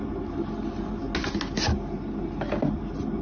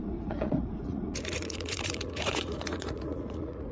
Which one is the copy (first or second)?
second